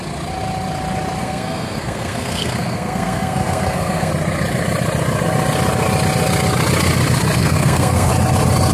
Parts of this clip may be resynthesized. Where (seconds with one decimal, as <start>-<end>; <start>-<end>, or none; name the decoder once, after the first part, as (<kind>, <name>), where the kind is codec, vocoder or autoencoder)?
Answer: 1.2-4.1 (codec, SNAC); 7.4-8.1

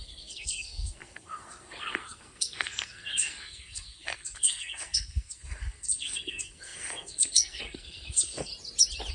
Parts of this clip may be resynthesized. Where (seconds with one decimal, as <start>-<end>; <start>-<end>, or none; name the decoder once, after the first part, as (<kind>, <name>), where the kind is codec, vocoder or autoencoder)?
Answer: 0.0-8.5 (codec, SNAC)